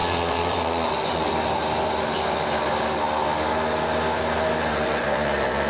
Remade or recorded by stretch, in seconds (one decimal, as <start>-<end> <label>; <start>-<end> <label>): 0.0-1.3 remade; 1.3-4.7 recorded; 4.7-5.7 remade